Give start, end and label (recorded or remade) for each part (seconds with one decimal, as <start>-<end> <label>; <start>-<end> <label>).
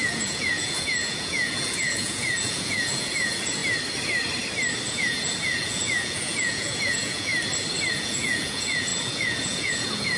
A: 0.0-3.6 remade; 3.6-4.9 recorded; 4.9-7.3 remade; 7.3-7.9 recorded; 7.9-10.2 remade